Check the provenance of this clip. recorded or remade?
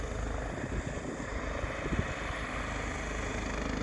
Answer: recorded